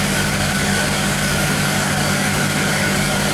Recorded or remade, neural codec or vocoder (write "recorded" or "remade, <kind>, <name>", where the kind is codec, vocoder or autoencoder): remade, codec, DAC